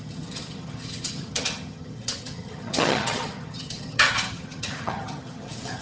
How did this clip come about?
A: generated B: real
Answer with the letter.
A